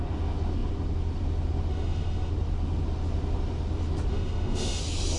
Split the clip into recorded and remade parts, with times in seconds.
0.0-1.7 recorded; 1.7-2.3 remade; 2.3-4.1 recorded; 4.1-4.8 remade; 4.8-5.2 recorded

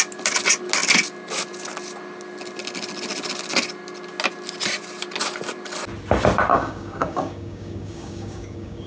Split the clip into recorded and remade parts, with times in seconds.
0.0-6.5 recorded; 6.5-8.9 remade

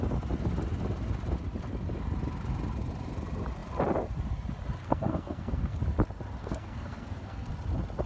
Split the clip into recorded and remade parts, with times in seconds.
0.0-4.8 recorded; 4.8-5.8 remade; 5.8-6.4 recorded; 6.4-7.5 remade; 7.5-8.1 recorded

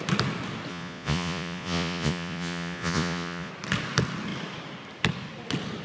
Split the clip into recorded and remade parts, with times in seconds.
0.0-0.7 recorded; 0.7-3.5 remade; 3.5-5.8 recorded

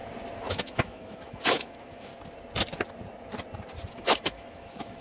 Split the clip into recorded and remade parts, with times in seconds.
0.0-0.5 recorded; 0.5-2.1 remade; 2.1-3.9 recorded; 3.9-5.0 remade